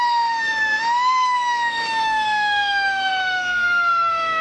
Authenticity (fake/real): fake